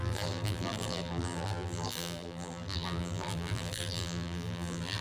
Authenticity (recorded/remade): remade